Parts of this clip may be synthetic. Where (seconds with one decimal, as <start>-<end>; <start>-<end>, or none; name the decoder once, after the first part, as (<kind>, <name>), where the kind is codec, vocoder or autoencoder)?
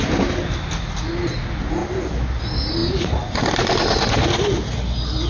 none